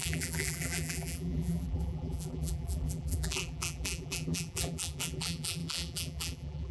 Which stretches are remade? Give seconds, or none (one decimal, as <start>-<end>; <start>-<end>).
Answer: 0.0-6.7